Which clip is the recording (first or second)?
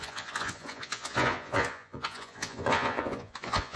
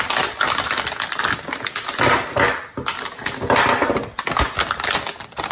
second